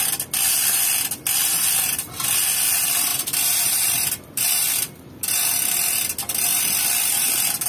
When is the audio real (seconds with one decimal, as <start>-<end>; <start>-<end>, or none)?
0.0-3.1; 4.4-6.5; 7.3-7.7